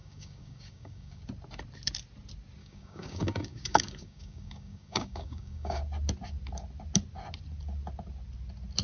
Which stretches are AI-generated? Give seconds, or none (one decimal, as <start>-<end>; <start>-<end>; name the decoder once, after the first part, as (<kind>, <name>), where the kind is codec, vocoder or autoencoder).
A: 0.0-1.2 (codec, DAC); 2.6-5.8